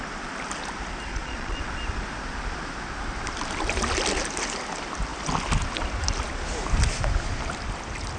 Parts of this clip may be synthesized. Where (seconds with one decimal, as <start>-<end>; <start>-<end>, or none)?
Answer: 1.1-1.6